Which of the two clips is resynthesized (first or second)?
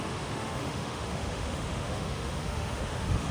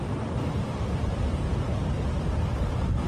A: first